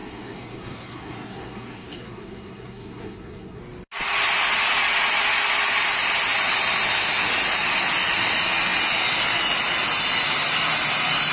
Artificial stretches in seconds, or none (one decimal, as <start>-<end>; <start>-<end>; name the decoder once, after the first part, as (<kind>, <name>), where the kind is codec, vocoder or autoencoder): 0.0-3.6 (codec, SNAC)